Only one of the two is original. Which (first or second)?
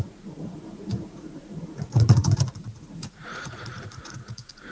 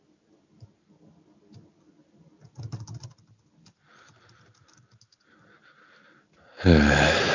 second